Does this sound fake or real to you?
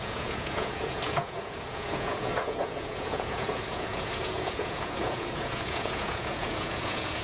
fake